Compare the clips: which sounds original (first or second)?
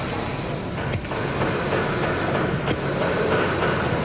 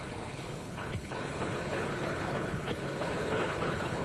first